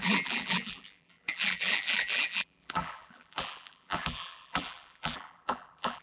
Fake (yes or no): yes